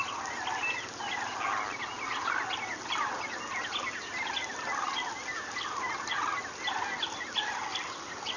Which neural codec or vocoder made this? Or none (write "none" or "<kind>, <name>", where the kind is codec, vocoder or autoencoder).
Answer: none